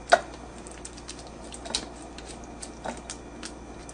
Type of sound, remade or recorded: recorded